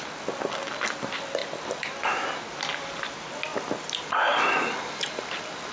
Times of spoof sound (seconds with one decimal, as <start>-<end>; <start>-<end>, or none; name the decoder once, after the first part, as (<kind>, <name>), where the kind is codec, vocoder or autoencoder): 1.4-2.0 (vocoder, BigVGAN v2)